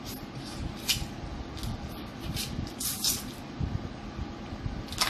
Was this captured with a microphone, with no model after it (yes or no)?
yes